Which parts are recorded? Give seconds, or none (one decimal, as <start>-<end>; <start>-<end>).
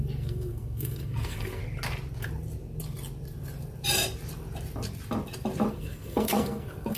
1.6-5.7